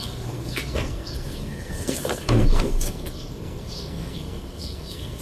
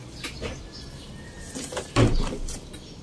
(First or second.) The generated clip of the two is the first